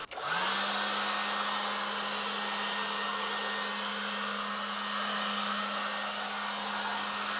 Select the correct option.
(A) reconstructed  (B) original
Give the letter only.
B